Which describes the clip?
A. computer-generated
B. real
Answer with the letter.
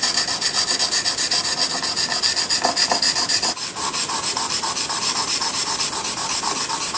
B